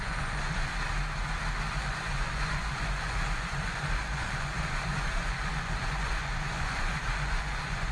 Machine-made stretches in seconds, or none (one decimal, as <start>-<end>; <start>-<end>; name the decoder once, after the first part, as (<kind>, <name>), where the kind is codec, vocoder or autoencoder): 0.0-0.7 (vocoder, Vocos); 1.8-7.9